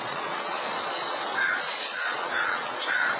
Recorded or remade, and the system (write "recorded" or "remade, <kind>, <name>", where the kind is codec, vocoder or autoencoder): remade, vocoder, Vocos